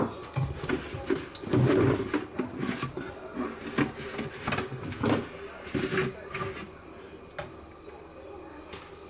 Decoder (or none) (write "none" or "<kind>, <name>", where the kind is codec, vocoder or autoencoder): none